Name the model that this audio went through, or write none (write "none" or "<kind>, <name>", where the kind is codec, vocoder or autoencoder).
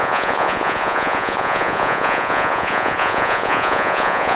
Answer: vocoder, Vocos